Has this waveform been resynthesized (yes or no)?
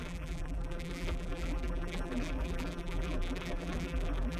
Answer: yes